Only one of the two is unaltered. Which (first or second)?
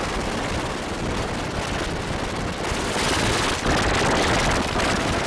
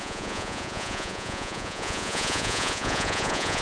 first